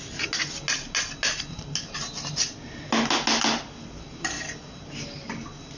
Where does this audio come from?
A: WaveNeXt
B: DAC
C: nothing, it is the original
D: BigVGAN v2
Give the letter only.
C